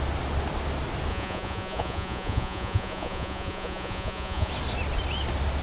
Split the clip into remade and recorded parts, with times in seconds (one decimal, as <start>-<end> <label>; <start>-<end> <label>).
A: 0.0-1.1 recorded; 1.1-4.5 remade; 4.5-5.6 recorded